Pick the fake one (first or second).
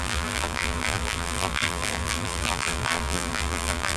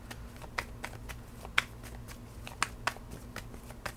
first